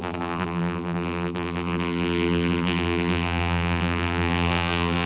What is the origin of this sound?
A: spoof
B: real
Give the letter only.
A